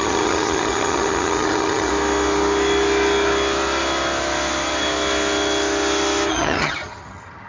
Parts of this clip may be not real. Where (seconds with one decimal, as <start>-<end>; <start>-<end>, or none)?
0.0-1.9; 6.3-7.5